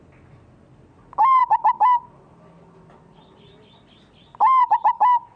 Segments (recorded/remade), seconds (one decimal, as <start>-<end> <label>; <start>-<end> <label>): 0.0-5.4 recorded